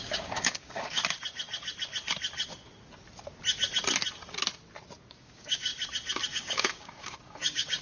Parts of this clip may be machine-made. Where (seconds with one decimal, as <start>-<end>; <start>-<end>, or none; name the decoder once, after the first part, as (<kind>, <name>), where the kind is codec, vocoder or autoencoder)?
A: 0.0-1.0 (codec, DAC); 5.1-5.7; 6.3-7.8